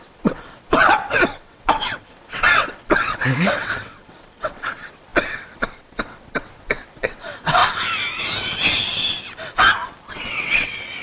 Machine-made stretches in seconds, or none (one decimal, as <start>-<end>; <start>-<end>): 0.0-7.6; 10.1-11.0